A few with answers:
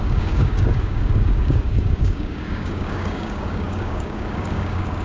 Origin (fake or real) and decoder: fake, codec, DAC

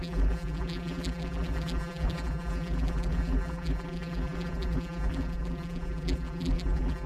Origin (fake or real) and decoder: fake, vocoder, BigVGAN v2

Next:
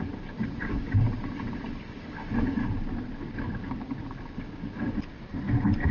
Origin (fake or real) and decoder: real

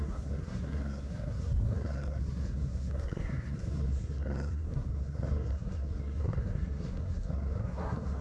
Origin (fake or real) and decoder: fake, codec, SNAC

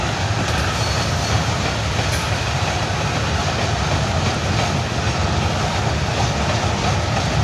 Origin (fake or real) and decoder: real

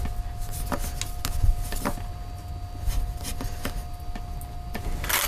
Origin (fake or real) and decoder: real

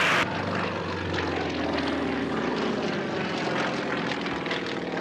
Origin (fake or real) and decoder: real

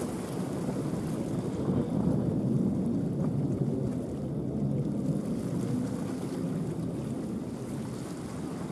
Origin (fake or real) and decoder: real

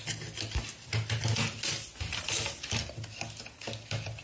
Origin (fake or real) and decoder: real